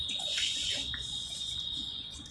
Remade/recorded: remade